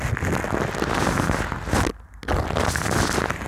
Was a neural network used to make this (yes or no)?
no